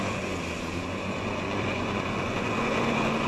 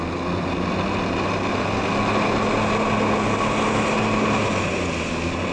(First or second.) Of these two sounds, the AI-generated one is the first